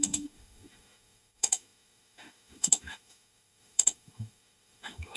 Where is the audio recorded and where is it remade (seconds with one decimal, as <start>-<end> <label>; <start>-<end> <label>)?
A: 0.0-5.2 remade

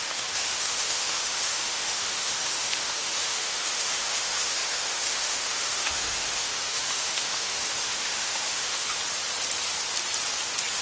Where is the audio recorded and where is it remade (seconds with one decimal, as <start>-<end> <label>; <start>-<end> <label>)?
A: 0.0-9.0 remade; 9.0-10.8 recorded

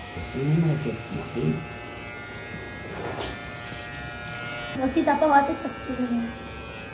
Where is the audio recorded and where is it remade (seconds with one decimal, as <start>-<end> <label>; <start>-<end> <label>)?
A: 0.0-1.5 remade; 1.5-6.9 recorded

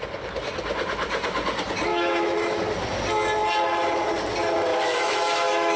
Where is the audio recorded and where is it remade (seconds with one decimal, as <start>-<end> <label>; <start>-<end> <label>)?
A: 0.0-1.9 recorded; 1.9-2.6 remade; 2.6-4.7 recorded; 4.7-5.8 remade

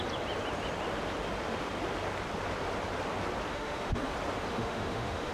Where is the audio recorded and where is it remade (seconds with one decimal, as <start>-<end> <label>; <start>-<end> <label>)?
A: 0.0-3.5 recorded; 3.5-4.1 remade; 4.1-4.5 recorded; 4.5-5.3 remade